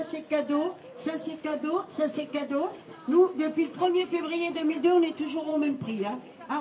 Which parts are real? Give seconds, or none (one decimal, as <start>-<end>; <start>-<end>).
0.0-0.8; 4.8-5.5